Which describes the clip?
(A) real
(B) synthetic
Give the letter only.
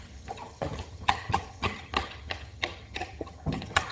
B